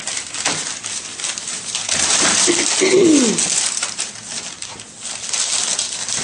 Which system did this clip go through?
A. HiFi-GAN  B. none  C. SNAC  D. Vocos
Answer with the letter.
B